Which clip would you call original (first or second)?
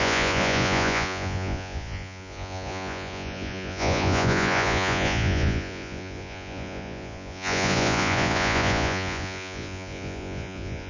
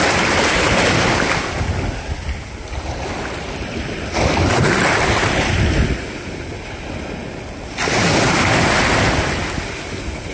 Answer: second